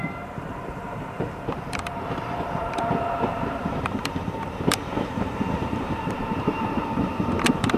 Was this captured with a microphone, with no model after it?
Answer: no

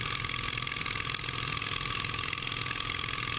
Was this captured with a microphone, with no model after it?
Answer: yes